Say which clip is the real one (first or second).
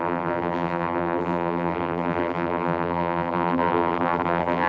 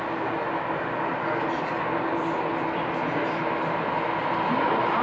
second